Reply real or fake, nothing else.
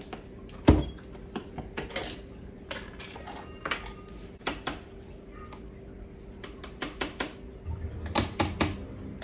real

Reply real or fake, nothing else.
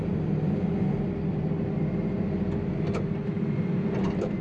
real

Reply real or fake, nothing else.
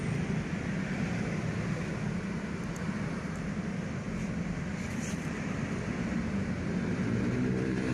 fake